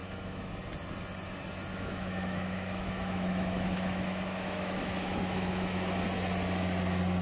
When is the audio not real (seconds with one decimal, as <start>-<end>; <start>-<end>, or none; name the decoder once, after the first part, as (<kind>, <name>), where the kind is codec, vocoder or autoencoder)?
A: 0.0-0.5 (autoencoder, DAC-VAE); 1.7-6.0